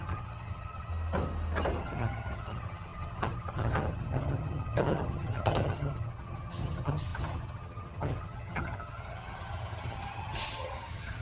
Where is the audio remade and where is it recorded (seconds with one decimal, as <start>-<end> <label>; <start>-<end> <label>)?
0.0-0.9 remade; 0.9-1.8 recorded; 1.8-11.2 remade